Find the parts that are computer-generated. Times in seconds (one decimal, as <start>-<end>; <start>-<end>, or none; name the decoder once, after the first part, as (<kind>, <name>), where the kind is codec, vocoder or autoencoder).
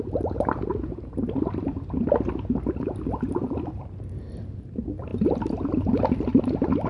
none